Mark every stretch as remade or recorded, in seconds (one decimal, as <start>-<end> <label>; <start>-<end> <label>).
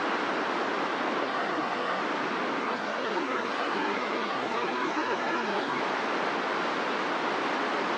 0.0-1.2 recorded; 1.2-2.0 remade; 2.0-2.6 recorded; 2.6-5.8 remade; 5.8-8.0 recorded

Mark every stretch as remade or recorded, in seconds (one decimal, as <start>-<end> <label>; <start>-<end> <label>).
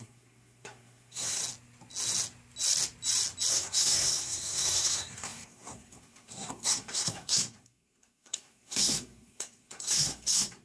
0.0-1.4 remade; 1.4-3.5 recorded; 3.5-10.6 remade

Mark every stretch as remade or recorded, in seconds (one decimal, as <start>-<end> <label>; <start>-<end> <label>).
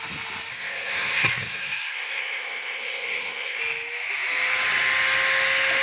0.0-0.5 recorded; 0.5-3.6 remade; 3.6-5.8 recorded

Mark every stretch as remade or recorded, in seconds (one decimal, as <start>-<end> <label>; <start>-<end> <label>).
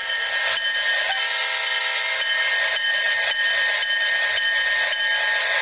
0.0-5.6 recorded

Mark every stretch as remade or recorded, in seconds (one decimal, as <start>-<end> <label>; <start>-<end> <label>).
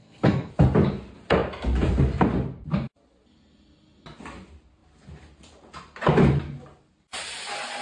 0.0-0.5 remade; 0.5-7.8 recorded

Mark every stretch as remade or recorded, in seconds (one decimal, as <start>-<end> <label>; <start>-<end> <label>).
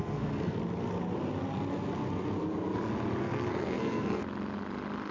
0.0-0.6 remade; 0.6-3.2 recorded; 3.2-4.2 remade; 4.2-5.1 recorded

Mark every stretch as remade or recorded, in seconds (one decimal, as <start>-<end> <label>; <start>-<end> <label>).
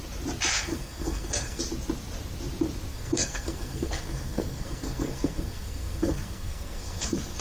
0.0-0.5 recorded; 0.5-1.6 remade; 1.6-2.9 recorded; 2.9-7.4 remade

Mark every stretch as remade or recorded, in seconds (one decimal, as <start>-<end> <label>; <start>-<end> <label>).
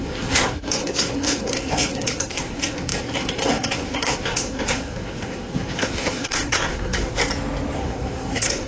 0.0-7.2 remade; 7.2-7.8 recorded; 7.8-8.7 remade